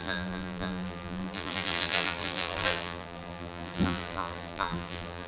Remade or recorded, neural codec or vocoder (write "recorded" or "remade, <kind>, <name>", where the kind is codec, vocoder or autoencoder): remade, vocoder, BigVGAN v2